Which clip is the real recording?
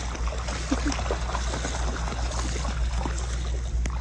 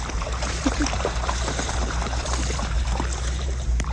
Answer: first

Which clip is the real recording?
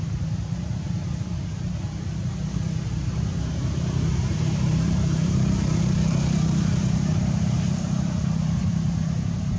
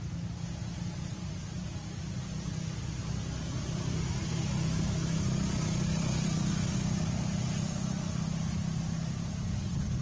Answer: second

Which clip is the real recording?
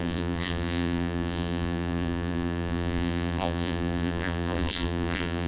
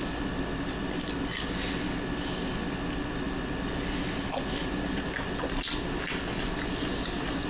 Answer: second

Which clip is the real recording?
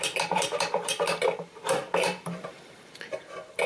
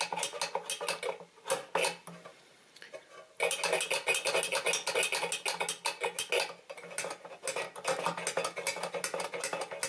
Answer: second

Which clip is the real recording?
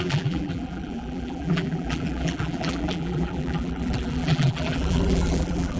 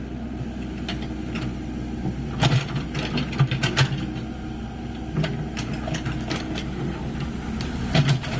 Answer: second